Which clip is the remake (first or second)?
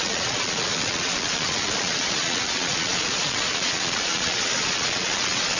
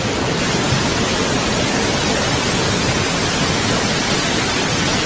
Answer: first